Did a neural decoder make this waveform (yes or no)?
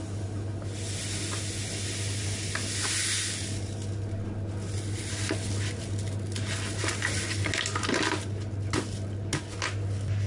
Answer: no